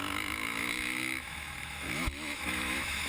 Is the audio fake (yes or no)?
yes